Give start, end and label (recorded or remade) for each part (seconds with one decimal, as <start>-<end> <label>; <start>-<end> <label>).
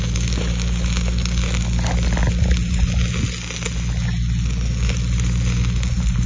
0.0-6.3 recorded